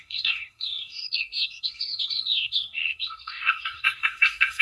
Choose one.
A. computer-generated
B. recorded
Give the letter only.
A